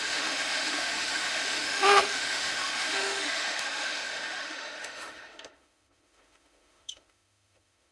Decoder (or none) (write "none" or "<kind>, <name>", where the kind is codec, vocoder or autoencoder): autoencoder, DAC-VAE